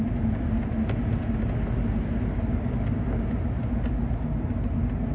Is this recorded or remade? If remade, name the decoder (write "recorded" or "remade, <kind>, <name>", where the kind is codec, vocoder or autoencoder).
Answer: recorded